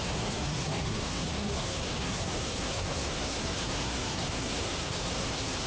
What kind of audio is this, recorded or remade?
remade